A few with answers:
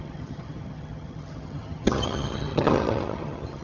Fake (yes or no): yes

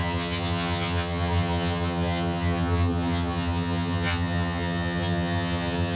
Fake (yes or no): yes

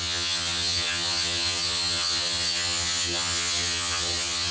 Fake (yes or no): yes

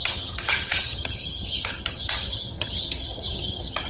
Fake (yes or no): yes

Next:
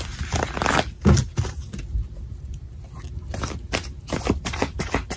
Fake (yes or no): no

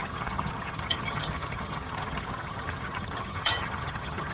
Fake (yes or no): yes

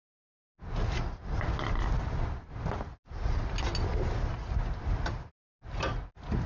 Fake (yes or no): no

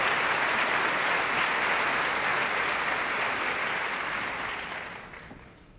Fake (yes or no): no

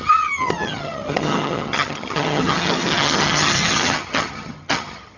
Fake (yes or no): yes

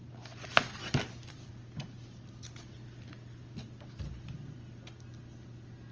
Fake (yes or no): no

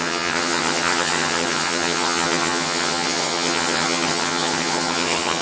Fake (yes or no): yes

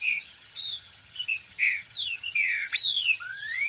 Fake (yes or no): yes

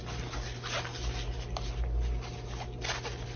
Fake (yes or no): no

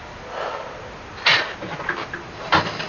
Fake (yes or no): no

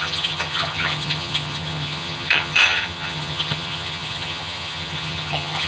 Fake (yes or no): yes